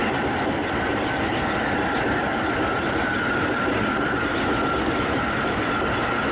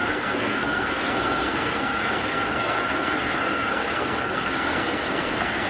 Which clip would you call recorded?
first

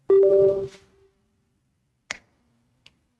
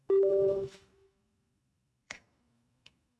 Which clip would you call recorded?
first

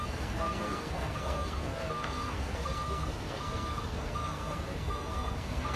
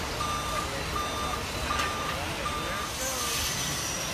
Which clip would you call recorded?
second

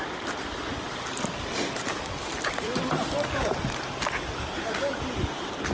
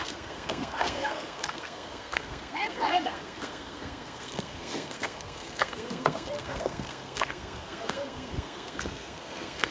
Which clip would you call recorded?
first